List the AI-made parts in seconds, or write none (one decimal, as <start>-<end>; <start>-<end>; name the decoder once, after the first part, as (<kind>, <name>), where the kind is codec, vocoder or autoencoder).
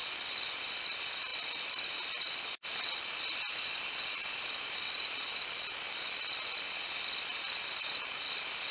0.0-0.6 (vocoder, BigVGAN v2); 1.3-5.3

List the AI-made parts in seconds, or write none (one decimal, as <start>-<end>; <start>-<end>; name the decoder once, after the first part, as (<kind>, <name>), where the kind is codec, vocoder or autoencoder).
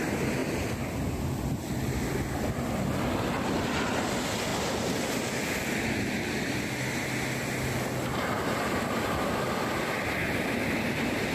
none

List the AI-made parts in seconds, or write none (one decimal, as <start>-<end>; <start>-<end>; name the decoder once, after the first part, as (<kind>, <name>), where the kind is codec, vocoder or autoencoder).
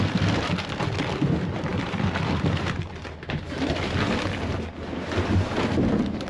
none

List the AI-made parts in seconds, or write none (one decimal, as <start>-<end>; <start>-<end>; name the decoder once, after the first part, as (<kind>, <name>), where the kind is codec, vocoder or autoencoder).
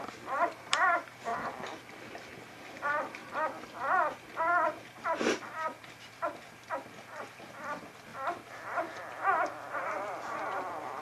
0.0-1.3 (vocoder, BigVGAN v2); 2.7-3.2; 4.9-11.0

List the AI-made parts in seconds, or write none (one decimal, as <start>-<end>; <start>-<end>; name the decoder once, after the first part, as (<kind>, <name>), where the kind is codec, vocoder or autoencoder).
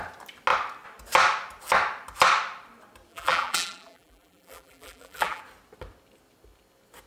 3.1-5.4 (vocoder, BigVGAN v2)